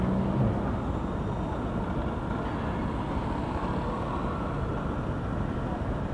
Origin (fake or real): real